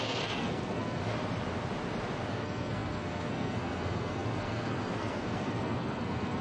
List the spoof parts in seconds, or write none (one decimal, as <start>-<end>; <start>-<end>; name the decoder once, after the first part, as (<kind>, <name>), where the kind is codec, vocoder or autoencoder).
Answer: 0.0-1.0 (codec, SNAC); 2.3-6.4